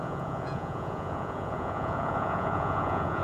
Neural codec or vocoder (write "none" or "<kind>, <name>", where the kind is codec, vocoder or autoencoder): vocoder, Vocos